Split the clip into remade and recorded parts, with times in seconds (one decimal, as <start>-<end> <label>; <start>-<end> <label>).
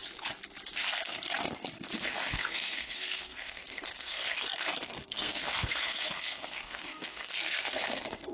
0.0-0.8 recorded; 0.8-8.3 remade